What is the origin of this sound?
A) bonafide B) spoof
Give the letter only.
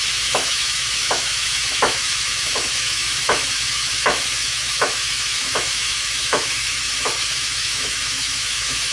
B